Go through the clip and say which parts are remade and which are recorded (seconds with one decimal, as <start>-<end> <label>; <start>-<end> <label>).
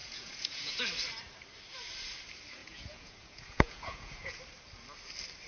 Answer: 0.0-0.8 remade; 0.8-2.6 recorded; 2.6-4.4 remade; 4.4-5.5 recorded